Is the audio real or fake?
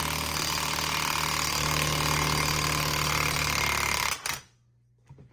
real